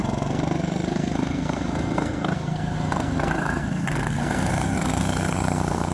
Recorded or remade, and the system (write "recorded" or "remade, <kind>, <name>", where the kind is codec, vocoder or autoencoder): remade, codec, SNAC